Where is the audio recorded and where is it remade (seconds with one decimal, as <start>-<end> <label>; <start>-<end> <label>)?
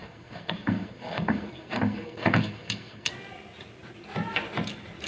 0.0-3.1 remade; 3.1-5.1 recorded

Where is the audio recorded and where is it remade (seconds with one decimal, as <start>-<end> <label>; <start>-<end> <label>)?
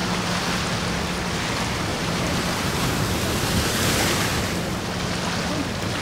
0.0-1.9 recorded; 1.9-3.1 remade; 3.1-6.0 recorded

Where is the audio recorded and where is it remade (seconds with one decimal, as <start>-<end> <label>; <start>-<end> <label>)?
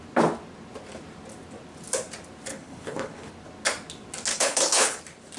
0.0-2.5 recorded; 2.5-3.3 remade; 3.3-4.3 recorded; 4.3-5.0 remade; 5.0-5.4 recorded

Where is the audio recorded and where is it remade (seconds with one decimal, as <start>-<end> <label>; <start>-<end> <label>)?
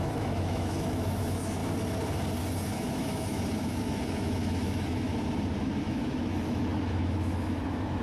0.0-1.6 remade; 1.6-2.7 recorded; 2.7-5.1 remade; 5.1-5.6 recorded; 5.6-8.0 remade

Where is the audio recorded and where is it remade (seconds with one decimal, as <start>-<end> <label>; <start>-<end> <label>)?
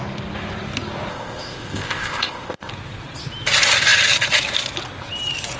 0.0-1.1 recorded; 1.1-2.7 remade; 2.7-5.6 recorded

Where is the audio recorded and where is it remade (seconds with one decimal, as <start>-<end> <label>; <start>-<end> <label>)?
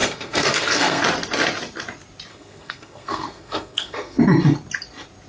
0.0-1.0 remade; 1.0-2.3 recorded; 2.3-4.2 remade; 4.2-5.3 recorded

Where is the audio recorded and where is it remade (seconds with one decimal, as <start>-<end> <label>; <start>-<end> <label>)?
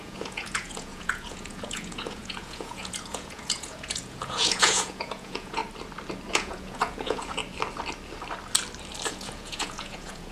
0.0-5.6 remade; 5.6-6.3 recorded; 6.3-7.4 remade; 7.4-9.1 recorded; 9.1-10.3 remade